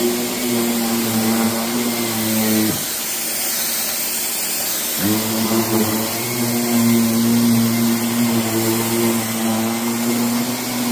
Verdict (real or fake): real